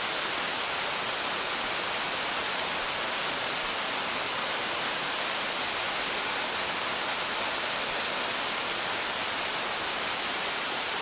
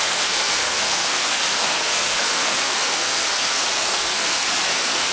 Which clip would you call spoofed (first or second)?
second